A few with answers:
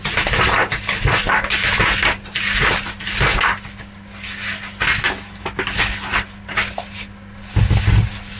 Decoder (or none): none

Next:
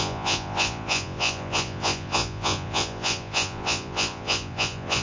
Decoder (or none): vocoder, Vocos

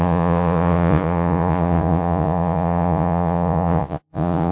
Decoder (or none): vocoder, Vocos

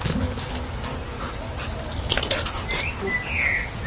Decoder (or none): none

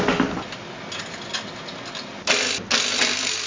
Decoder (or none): none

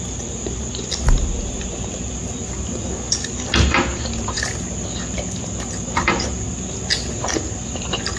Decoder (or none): none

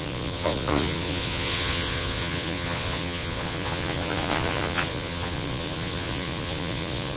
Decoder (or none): vocoder, Vocos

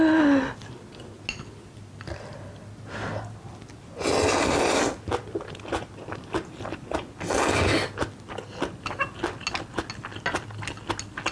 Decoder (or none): none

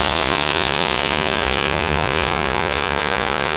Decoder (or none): vocoder, Vocos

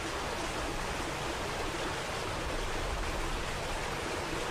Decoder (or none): none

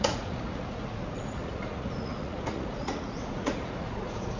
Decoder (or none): vocoder, Vocos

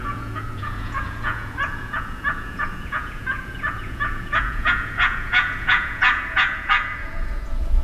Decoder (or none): vocoder, Vocos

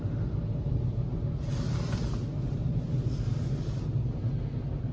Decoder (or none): none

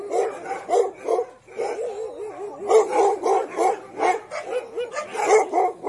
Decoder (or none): none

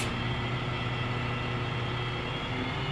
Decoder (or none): none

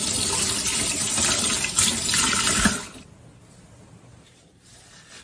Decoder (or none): none